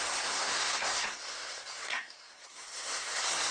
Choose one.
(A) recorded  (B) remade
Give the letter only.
B